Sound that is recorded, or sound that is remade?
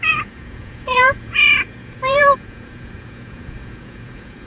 remade